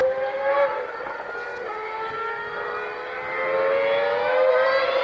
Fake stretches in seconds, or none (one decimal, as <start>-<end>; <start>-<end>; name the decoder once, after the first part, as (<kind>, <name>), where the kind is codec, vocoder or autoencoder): none